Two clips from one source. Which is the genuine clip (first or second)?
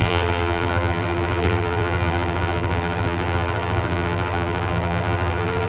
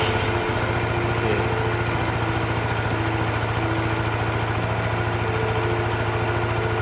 second